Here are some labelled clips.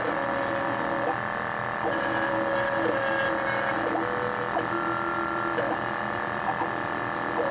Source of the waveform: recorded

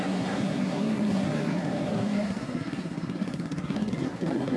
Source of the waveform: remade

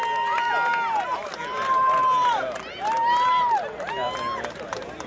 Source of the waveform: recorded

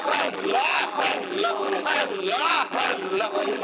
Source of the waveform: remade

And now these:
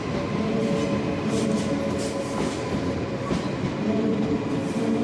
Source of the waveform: recorded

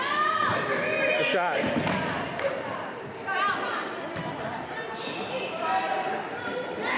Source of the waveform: recorded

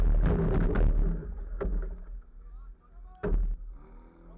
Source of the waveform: recorded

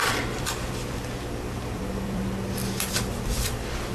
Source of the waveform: remade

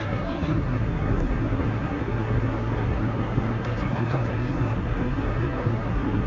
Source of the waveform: remade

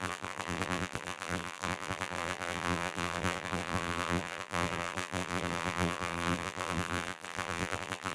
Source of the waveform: remade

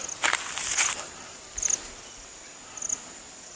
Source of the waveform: recorded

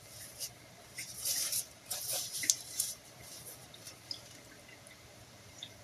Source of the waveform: remade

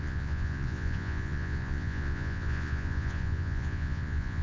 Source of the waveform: remade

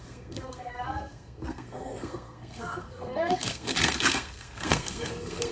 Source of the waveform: remade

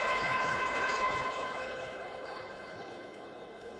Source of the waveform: remade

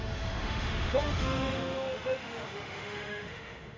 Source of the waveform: remade